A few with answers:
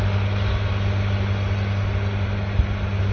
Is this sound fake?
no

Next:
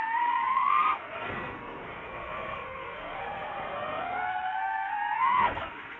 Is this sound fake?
yes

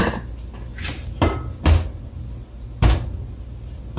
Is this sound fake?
no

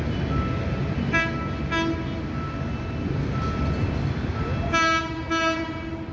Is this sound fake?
no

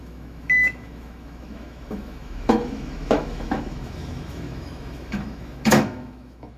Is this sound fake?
yes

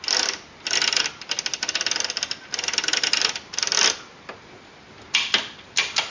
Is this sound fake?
no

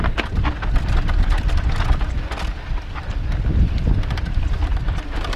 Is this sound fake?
no